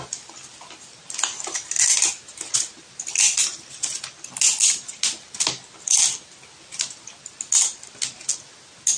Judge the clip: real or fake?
real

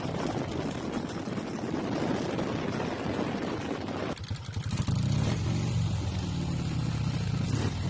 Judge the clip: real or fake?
real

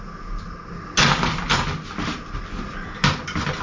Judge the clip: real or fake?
real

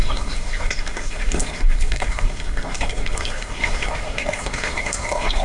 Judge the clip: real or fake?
fake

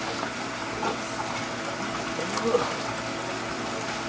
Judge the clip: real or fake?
real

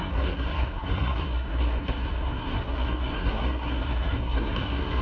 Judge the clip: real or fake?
fake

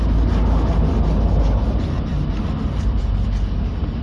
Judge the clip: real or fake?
real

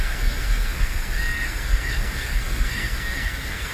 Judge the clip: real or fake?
fake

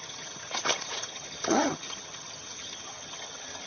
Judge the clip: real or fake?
fake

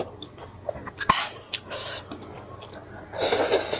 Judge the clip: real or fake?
real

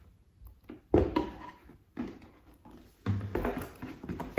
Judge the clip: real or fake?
real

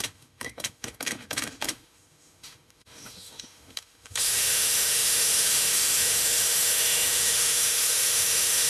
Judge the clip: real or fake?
fake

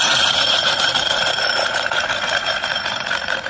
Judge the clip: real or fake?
fake